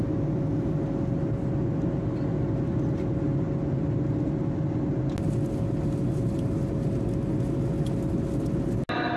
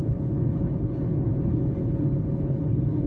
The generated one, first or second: second